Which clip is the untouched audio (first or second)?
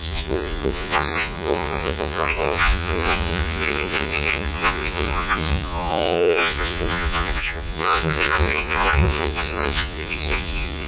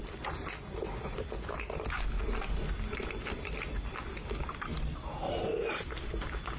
second